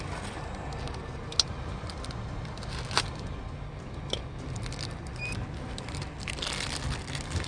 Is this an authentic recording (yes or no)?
yes